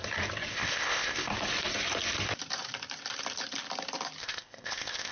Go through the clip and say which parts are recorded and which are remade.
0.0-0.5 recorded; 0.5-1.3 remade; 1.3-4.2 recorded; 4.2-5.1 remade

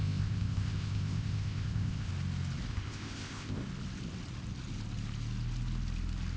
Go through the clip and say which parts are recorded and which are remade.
0.0-2.1 remade; 2.1-2.7 recorded; 2.7-3.6 remade; 3.6-6.4 recorded